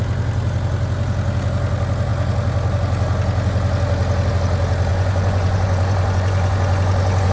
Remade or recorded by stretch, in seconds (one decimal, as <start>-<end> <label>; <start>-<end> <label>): 0.0-4.9 recorded; 4.9-7.3 remade